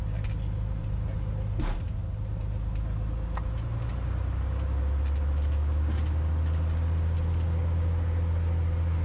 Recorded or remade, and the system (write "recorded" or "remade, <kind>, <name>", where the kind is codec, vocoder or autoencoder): recorded